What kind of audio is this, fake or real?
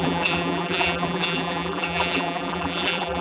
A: fake